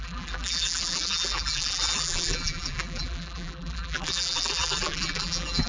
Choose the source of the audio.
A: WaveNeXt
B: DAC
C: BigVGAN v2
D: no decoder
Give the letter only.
C